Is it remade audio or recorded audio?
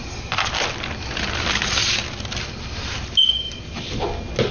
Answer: recorded